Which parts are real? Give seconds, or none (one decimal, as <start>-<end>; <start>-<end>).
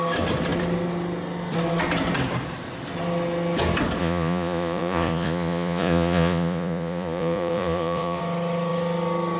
0.0-4.0; 8.2-9.4